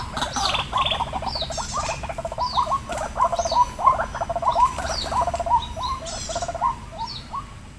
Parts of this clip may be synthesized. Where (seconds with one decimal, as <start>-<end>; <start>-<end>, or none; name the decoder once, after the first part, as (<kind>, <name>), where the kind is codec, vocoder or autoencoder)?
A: none

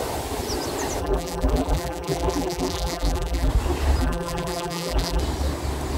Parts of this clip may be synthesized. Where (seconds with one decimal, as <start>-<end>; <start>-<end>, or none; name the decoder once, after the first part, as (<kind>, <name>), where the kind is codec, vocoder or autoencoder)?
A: 1.0-3.5 (vocoder, BigVGAN v2); 4.0-5.2

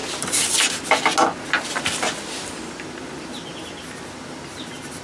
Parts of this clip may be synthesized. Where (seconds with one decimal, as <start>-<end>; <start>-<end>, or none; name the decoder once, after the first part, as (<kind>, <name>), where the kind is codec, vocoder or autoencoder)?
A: 0.0-0.6 (vocoder, BigVGAN v2)

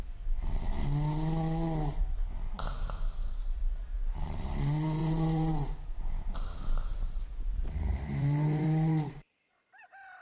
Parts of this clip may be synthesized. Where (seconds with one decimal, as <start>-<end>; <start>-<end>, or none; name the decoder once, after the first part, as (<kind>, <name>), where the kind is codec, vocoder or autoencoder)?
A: 5.0-9.6 (vocoder, BigVGAN v2)

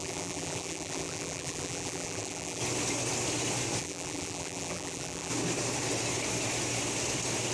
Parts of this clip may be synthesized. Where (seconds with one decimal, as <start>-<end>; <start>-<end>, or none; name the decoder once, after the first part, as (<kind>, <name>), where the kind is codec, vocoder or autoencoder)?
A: 0.0-2.6 (vocoder, BigVGAN v2); 3.8-5.3

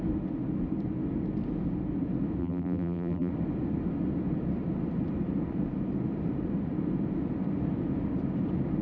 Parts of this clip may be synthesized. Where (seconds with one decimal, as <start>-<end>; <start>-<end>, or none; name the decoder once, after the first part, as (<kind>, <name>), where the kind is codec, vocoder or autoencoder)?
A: 2.4-3.3 (vocoder, BigVGAN v2)

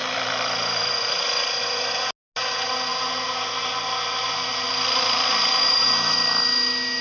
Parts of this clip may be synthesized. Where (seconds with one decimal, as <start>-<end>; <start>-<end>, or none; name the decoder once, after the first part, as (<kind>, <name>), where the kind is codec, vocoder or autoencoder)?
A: 0.0-1.6 (vocoder, BigVGAN v2)

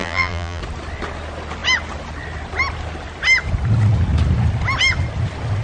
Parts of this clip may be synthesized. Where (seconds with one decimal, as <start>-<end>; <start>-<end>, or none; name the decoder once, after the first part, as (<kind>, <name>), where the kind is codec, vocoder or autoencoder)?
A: 0.0-0.6 (vocoder, BigVGAN v2)